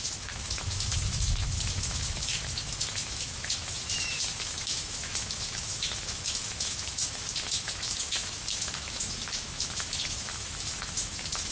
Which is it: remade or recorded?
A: remade